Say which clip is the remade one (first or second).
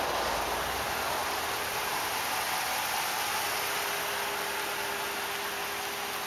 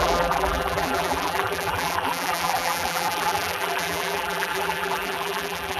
second